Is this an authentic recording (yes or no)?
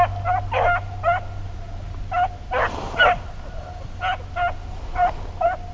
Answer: yes